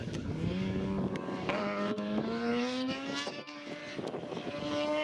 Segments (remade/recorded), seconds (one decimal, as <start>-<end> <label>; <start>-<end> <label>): 0.0-3.8 remade; 3.8-4.6 recorded; 4.6-5.0 remade